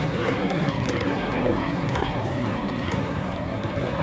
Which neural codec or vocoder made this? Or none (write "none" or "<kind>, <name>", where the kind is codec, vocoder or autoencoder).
codec, SNAC